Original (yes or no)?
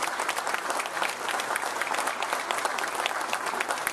yes